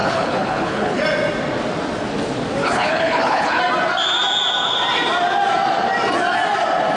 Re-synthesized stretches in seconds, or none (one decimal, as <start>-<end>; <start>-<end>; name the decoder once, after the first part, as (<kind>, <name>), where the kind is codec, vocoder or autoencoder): 0.0-1.0 (codec, HILCodec); 2.6-3.6

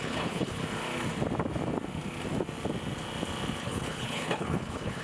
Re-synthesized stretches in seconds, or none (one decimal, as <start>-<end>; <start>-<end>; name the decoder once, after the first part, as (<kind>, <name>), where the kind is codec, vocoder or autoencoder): 0.0-0.6 (codec, HILCodec); 3.6-5.0

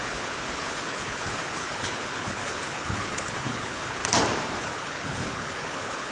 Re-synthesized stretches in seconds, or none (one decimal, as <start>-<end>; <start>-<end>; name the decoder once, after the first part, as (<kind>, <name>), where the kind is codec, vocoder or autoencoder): 0.0-4.0 (codec, HILCodec); 4.6-6.1

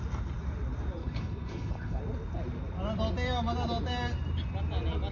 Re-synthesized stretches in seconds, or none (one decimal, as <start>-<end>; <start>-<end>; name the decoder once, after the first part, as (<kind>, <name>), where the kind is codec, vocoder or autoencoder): 1.0-2.0 (codec, HILCodec)

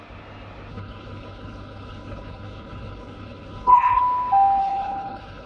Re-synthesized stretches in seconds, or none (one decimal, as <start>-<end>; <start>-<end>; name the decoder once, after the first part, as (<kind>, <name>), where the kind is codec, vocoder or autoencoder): 0.7-4.0 (codec, HILCodec); 4.6-5.5

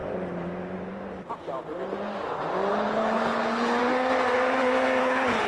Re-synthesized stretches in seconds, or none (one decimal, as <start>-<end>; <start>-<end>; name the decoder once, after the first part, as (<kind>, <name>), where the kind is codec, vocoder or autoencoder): 2.7-3.8 (codec, HILCodec); 5.0-5.5

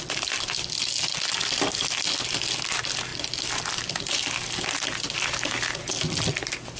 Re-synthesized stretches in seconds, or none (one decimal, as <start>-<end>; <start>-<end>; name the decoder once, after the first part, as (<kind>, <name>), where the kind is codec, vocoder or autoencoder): none